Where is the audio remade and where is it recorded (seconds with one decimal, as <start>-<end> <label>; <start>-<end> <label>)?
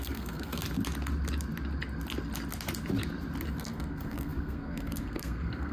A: 0.0-0.6 remade; 0.6-3.6 recorded; 3.6-5.7 remade